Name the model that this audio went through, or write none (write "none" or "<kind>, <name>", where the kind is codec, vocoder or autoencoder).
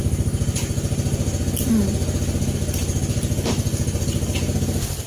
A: none